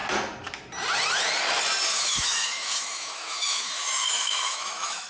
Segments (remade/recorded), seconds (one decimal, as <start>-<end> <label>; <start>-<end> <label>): 0.0-1.9 recorded; 1.9-5.1 remade